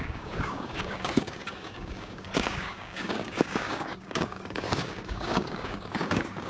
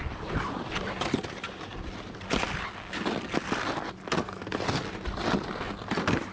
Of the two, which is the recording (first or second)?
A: second